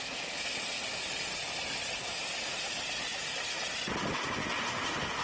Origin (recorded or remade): recorded